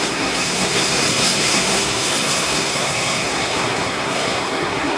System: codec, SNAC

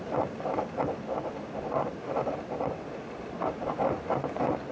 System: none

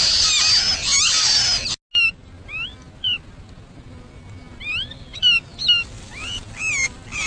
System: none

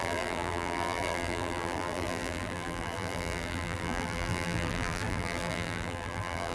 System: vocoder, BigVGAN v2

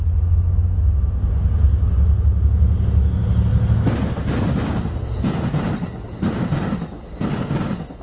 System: none